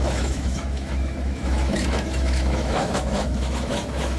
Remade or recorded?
remade